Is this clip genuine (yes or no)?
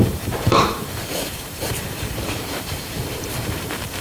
no